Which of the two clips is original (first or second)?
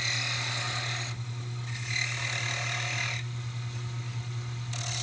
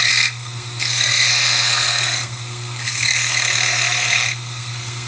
first